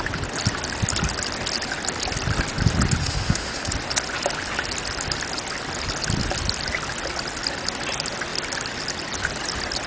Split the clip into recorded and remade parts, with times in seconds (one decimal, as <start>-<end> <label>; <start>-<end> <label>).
0.0-3.0 recorded; 3.0-3.7 remade; 3.7-9.9 recorded